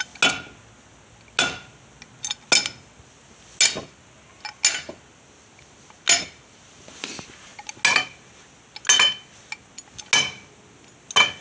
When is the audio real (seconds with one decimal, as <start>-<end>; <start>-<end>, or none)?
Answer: 0.0-11.4